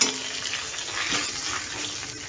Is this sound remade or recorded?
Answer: recorded